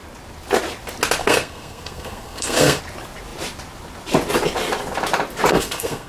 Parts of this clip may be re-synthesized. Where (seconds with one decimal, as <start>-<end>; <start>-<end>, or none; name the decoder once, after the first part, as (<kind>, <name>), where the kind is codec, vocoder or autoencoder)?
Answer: 1.2-2.8 (codec, SNAC); 5.5-6.1